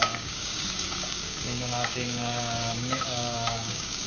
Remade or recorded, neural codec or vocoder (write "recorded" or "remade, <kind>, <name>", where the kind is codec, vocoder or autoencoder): remade, codec, DAC